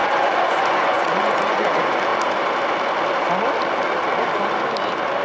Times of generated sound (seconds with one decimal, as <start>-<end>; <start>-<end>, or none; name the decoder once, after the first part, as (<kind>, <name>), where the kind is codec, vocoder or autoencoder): 0.0-2.1 (vocoder, Vocos)